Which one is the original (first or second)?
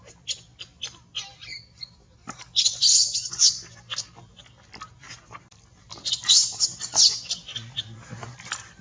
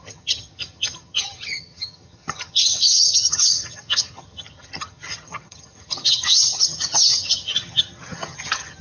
first